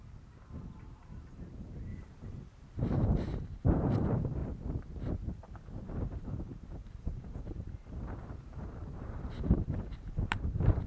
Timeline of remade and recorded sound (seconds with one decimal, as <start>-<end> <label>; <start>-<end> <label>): 0.0-1.9 remade; 1.9-2.8 recorded; 2.8-4.4 remade; 4.4-5.8 recorded; 5.8-10.9 remade